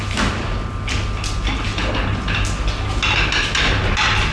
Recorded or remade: recorded